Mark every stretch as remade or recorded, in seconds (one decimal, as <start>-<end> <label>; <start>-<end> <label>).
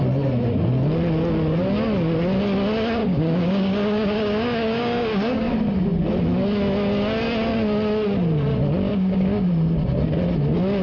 0.0-3.0 recorded; 3.0-5.5 remade; 5.5-8.9 recorded; 8.9-9.5 remade; 9.5-10.8 recorded